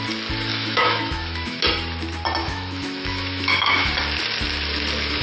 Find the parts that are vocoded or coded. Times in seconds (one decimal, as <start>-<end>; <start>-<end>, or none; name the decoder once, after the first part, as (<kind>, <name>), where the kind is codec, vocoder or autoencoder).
0.5-1.6 (autoencoder, DAC-VAE); 2.4-3.9